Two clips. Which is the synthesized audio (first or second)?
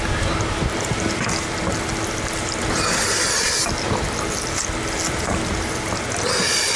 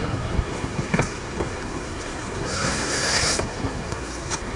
second